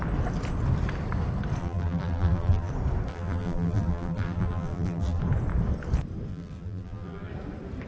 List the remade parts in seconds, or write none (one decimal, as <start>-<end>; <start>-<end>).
1.6-2.7; 3.1-5.2; 6.3-7.3